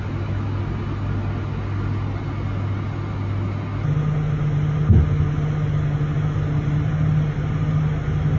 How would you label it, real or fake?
real